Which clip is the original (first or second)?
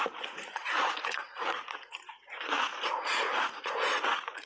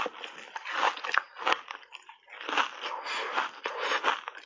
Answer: second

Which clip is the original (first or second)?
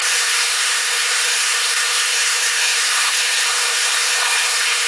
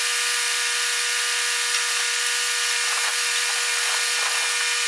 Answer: second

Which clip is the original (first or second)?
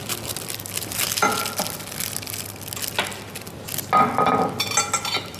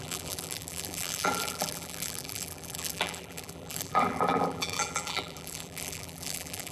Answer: first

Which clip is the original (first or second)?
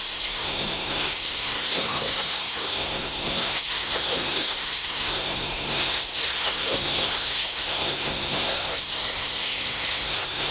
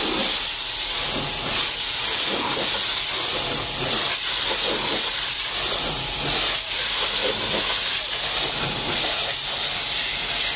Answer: second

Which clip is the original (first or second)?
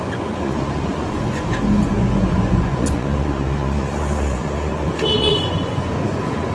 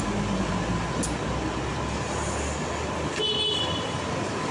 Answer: second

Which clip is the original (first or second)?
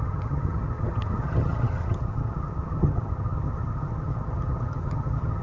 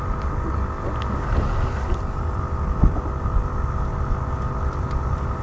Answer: second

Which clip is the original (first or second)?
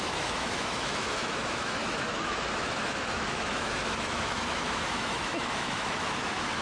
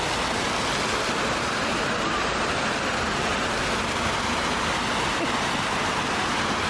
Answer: second